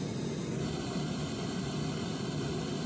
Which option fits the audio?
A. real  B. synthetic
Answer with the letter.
B